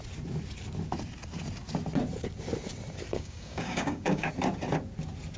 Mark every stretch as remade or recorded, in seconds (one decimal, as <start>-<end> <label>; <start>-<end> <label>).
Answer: 0.0-3.1 recorded; 3.1-4.3 remade; 4.3-5.4 recorded